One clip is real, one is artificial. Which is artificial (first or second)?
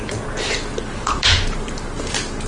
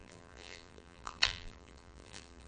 second